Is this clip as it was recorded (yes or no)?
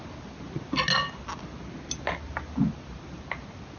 yes